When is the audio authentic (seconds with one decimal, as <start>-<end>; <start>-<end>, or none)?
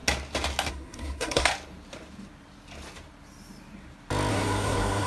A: 0.0-0.7; 1.5-4.3